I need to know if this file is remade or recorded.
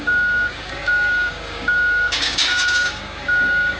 remade